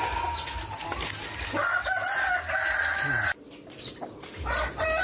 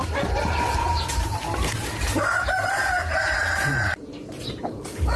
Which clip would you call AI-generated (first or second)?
second